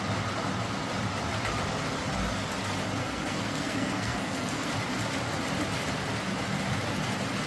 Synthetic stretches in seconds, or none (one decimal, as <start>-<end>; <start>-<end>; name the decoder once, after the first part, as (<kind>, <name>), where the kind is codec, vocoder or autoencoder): 3.0-4.7 (codec, SNAC)